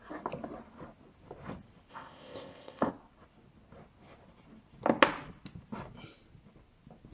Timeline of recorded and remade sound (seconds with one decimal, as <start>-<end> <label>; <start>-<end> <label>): 0.0-1.9 recorded; 1.9-2.9 remade; 2.9-7.1 recorded